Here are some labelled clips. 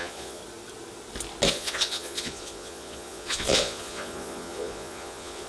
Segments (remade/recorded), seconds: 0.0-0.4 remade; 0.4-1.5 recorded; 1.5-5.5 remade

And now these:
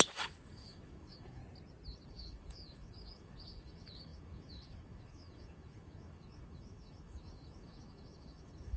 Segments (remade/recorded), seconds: 0.0-1.4 remade; 1.4-2.1 recorded; 2.1-8.8 remade

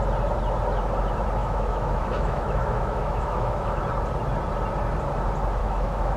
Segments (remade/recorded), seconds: 0.0-1.4 recorded; 1.4-3.8 remade; 3.8-5.6 recorded; 5.6-6.2 remade

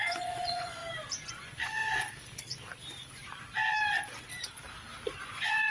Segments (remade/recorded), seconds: 0.0-0.8 remade; 0.8-1.3 recorded; 1.3-1.8 remade; 1.8-5.2 recorded; 5.2-5.7 remade

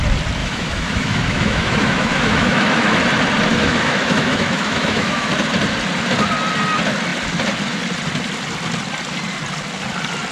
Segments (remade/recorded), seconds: 0.0-0.4 recorded; 0.4-3.0 remade; 3.0-3.5 recorded; 3.5-5.3 remade; 5.3-10.3 recorded